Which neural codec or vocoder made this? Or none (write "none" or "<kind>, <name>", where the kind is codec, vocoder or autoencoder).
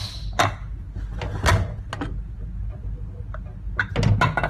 none